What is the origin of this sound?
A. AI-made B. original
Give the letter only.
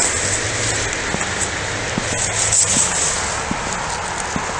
B